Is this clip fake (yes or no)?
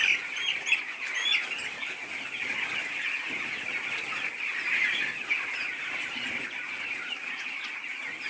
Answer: yes